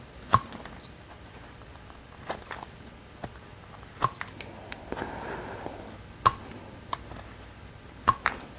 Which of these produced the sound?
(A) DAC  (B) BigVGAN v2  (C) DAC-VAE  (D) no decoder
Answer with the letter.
B